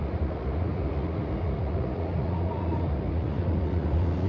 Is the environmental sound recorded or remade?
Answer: remade